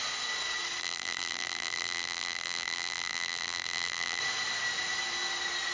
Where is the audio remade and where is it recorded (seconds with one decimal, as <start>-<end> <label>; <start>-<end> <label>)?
0.0-0.8 recorded; 0.8-4.2 remade; 4.2-5.7 recorded